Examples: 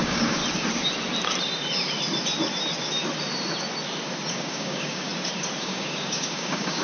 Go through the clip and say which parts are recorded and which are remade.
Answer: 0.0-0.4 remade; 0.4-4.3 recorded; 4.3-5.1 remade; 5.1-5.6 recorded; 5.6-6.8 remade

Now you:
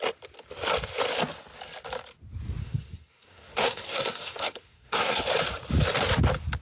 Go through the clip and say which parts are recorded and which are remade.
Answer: 0.0-2.6 recorded; 2.6-5.2 remade; 5.2-6.6 recorded

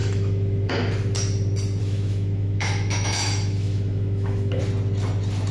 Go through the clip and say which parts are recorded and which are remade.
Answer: 0.0-0.7 remade; 0.7-1.8 recorded; 1.8-4.6 remade; 4.6-5.5 recorded

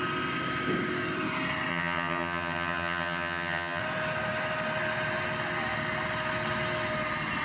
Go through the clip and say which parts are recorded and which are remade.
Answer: 0.0-1.7 recorded; 1.7-3.8 remade; 3.8-7.4 recorded